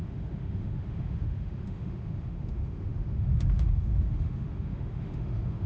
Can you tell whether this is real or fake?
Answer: fake